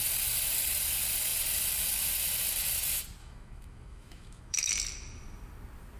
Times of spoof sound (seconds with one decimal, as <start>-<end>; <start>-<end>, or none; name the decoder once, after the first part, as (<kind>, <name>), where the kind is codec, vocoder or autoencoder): 3.2-4.7 (autoencoder, DAC-VAE)